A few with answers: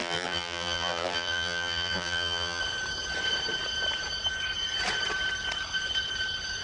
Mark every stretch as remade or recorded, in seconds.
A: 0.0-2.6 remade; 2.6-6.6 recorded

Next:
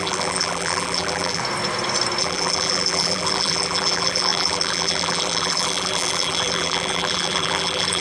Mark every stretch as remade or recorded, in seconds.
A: 0.0-1.4 remade; 1.4-2.2 recorded; 2.2-8.0 remade